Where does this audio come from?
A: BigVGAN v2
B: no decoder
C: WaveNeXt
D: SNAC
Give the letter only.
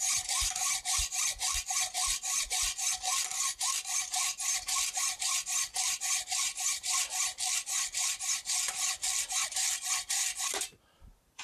A